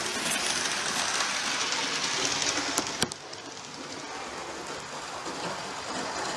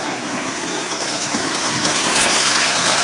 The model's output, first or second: second